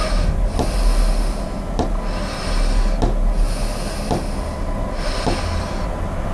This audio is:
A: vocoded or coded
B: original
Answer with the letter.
B